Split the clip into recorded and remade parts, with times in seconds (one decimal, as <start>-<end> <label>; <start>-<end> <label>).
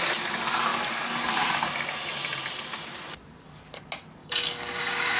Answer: 0.0-4.2 recorded; 4.2-5.2 remade